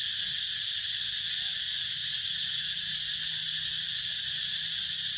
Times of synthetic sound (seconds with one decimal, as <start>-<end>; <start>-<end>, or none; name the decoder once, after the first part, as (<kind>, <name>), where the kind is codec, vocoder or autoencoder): none